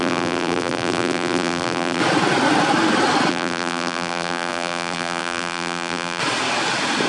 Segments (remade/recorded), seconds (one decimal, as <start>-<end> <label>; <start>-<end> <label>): 0.0-2.0 remade; 2.0-3.3 recorded; 3.3-6.2 remade; 6.2-7.1 recorded